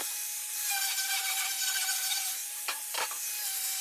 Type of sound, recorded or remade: remade